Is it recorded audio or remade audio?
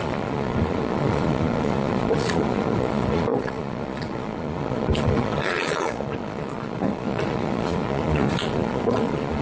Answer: remade